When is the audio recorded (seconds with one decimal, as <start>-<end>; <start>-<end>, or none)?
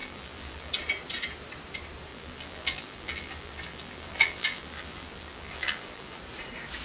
0.7-2.1; 6.2-6.8